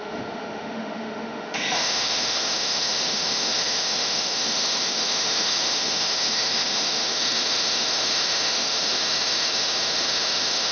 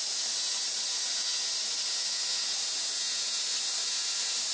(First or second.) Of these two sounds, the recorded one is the second